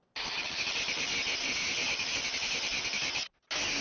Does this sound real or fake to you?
real